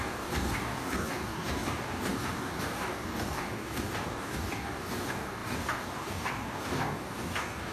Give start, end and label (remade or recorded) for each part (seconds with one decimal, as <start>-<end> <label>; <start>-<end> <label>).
0.0-7.7 remade